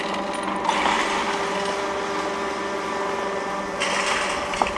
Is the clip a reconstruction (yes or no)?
no